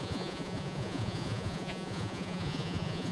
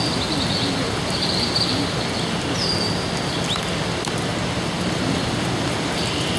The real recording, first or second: second